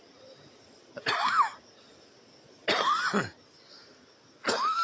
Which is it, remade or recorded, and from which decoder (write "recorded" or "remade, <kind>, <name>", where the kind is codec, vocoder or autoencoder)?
recorded